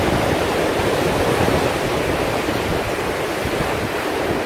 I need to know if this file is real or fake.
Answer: real